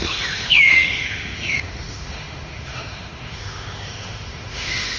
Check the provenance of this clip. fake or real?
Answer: fake